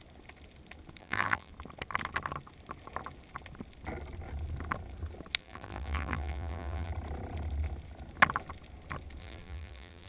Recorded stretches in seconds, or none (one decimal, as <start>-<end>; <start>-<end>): 0.0-1.0; 1.5-5.4; 6.9-9.2